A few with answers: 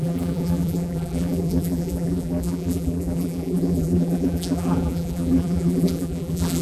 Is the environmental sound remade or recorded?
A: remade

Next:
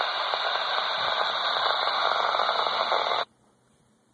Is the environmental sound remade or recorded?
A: recorded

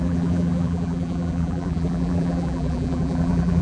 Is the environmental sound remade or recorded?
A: remade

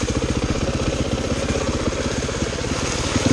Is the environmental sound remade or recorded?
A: recorded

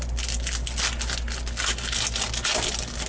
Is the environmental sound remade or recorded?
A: recorded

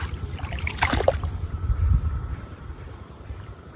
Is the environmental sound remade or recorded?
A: remade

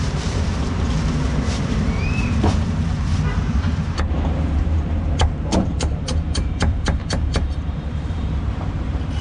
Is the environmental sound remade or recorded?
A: remade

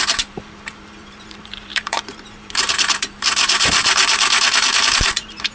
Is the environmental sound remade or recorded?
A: remade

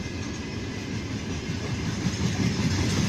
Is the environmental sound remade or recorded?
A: recorded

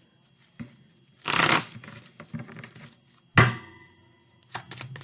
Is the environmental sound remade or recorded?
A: recorded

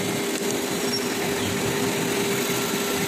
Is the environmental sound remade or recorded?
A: recorded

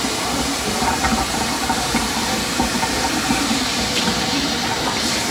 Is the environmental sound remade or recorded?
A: remade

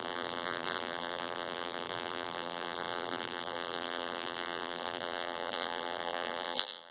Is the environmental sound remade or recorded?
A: remade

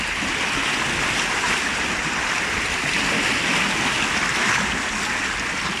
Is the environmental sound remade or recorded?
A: recorded